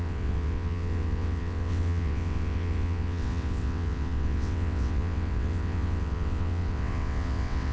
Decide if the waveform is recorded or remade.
remade